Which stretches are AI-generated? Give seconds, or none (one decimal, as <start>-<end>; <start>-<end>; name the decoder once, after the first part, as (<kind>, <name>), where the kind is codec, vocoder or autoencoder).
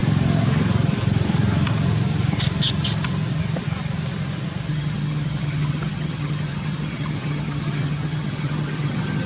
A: 4.7-9.3 (vocoder, HiFi-GAN)